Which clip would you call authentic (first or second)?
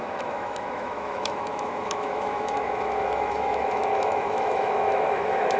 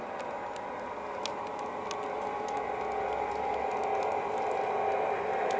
second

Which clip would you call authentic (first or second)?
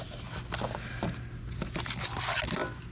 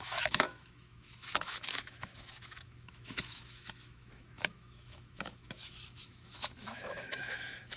first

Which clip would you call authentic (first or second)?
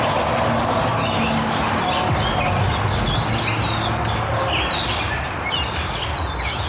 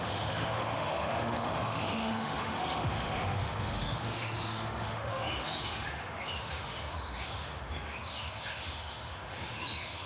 first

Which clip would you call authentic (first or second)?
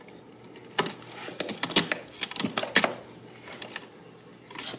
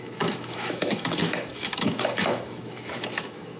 first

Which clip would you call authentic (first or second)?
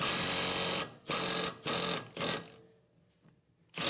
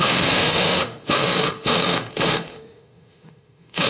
first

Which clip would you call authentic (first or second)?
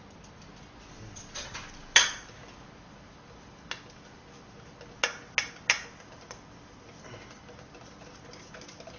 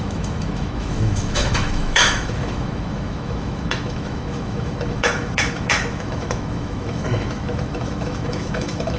first